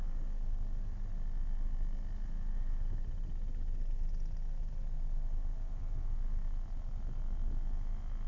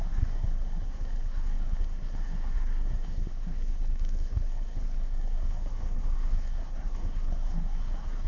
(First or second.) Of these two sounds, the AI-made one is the second